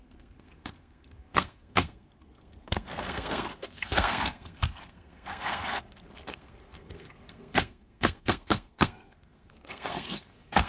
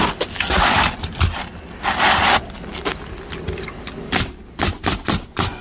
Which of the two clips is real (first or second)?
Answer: second